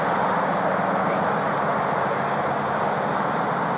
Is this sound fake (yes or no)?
no